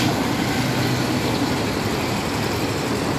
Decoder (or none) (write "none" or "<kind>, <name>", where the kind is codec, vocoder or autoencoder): none